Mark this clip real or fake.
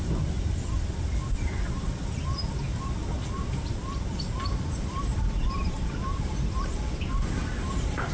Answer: real